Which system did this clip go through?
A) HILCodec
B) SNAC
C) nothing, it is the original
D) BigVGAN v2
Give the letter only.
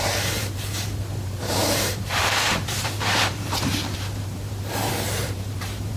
D